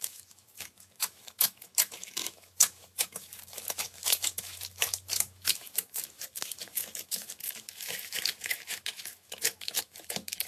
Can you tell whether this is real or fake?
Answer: fake